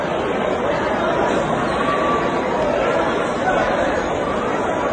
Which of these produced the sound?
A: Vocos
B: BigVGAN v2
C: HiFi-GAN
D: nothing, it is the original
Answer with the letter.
D